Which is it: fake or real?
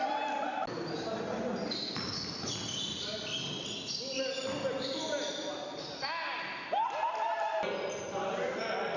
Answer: real